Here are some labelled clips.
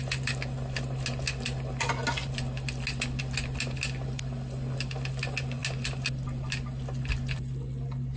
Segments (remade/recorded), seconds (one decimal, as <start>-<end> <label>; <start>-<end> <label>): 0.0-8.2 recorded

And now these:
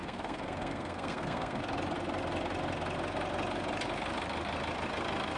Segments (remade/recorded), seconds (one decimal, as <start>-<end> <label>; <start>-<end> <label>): 0.0-1.6 remade; 1.6-5.4 recorded

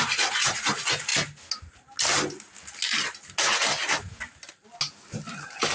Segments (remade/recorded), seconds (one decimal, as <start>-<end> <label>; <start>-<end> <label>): 0.0-5.7 recorded

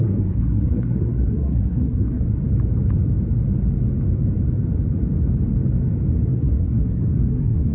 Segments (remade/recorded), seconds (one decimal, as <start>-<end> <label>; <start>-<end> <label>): 0.0-2.4 remade; 2.4-6.3 recorded; 6.3-7.7 remade